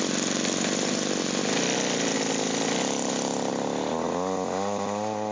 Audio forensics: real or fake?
real